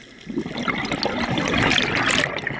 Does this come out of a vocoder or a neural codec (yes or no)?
no